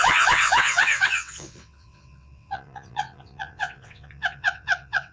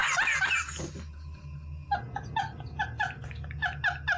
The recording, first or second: second